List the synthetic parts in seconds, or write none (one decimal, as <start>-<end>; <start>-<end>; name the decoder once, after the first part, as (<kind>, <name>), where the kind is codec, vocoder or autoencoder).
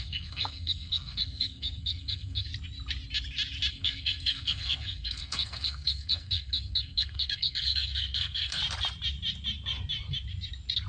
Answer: 0.0-2.5 (codec, SNAC); 3.7-8.6